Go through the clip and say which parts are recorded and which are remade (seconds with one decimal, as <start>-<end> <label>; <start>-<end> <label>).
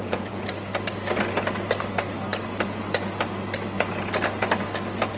0.0-0.5 remade; 0.5-5.2 recorded